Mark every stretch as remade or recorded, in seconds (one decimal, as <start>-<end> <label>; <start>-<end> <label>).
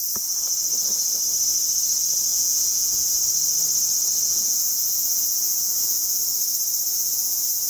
0.0-2.3 recorded; 2.3-3.1 remade; 3.1-4.3 recorded; 4.3-6.2 remade; 6.2-6.9 recorded; 6.9-7.7 remade